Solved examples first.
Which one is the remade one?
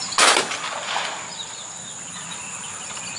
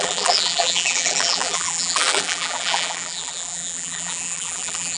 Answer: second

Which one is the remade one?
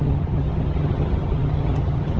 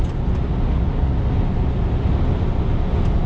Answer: first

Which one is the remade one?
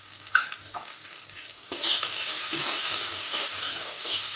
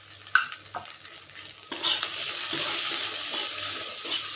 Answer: first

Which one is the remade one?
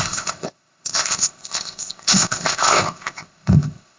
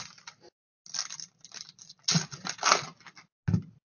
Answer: first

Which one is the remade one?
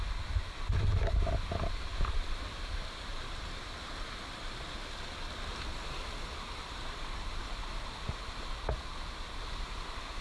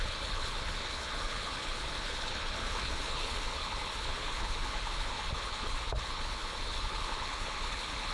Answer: second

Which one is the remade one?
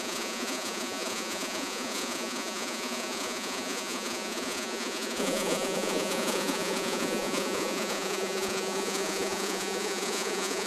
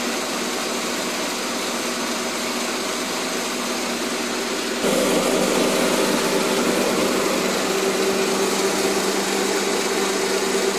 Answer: first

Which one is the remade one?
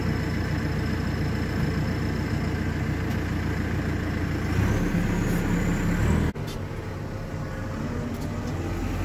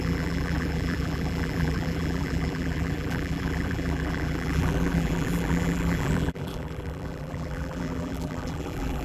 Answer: second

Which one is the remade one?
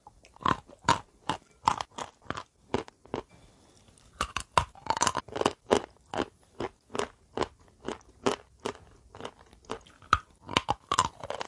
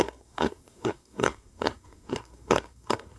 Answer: second